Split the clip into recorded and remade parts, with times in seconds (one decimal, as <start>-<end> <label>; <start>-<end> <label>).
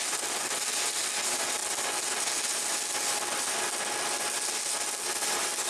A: 0.0-5.7 recorded